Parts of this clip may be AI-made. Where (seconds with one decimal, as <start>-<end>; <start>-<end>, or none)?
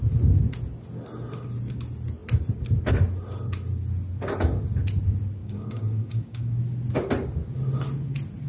5.4-6.6